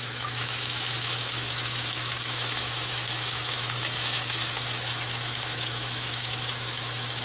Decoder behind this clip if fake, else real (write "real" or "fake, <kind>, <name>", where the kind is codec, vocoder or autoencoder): fake, autoencoder, DAC-VAE